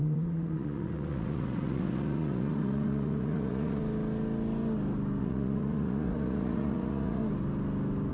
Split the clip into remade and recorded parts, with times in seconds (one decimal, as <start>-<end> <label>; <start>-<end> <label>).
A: 0.0-3.8 remade; 3.8-5.2 recorded; 5.2-7.2 remade; 7.2-8.1 recorded